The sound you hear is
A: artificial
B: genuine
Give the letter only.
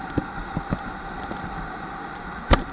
A